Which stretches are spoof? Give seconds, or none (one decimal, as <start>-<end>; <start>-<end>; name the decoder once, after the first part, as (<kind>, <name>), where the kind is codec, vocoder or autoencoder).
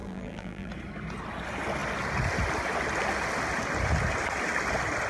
0.0-0.7 (vocoder, BigVGAN v2)